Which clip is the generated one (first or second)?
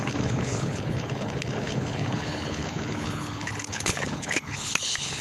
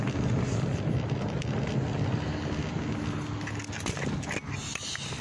first